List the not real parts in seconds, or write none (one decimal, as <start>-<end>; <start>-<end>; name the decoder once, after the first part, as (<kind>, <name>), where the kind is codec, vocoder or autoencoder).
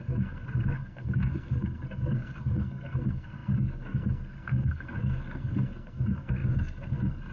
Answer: 0.0-7.3 (codec, SNAC)